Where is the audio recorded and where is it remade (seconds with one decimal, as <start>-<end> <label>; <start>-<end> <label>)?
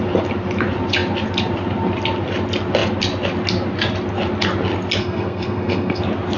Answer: 0.0-5.0 recorded; 5.0-6.0 remade; 6.0-6.4 recorded